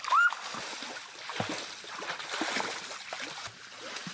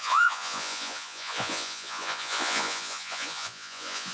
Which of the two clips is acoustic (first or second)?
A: first